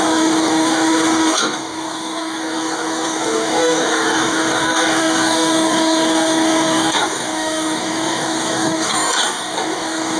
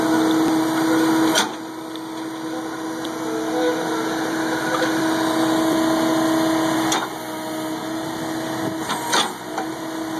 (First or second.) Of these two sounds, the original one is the second